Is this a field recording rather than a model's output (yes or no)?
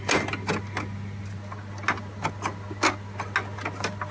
yes